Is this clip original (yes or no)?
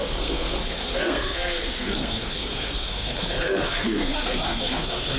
no